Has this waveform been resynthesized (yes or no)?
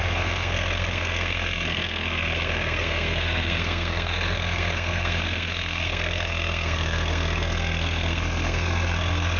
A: yes